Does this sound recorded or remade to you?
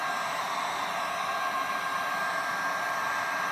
recorded